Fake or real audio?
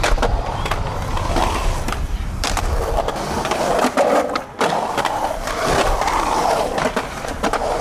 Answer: real